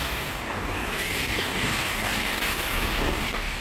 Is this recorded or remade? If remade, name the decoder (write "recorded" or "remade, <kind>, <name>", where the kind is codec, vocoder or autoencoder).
remade, codec, DAC